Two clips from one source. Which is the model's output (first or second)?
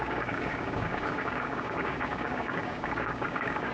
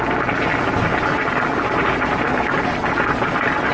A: first